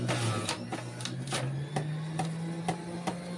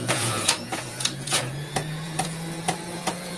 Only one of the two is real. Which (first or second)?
first